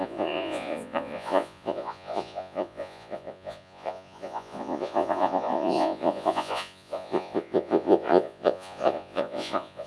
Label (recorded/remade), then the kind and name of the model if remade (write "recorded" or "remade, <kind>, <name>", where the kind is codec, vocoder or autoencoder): remade, vocoder, Vocos